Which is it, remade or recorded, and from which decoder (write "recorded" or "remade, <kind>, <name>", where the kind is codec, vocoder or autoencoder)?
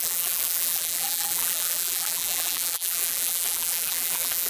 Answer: remade, vocoder, BigVGAN v2